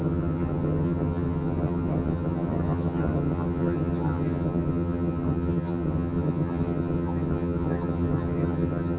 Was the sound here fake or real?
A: fake